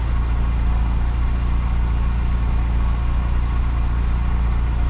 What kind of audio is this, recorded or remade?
recorded